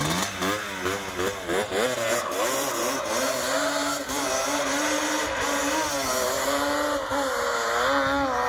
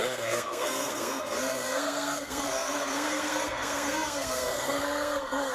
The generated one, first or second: second